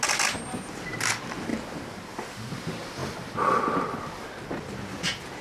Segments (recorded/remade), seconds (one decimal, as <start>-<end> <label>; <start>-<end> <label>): 0.0-1.5 recorded; 1.5-2.5 remade; 2.5-5.4 recorded